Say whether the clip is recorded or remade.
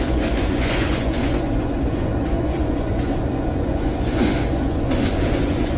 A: remade